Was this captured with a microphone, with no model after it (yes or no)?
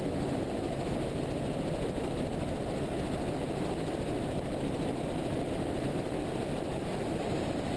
yes